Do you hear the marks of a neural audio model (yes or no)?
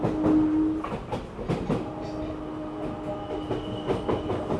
no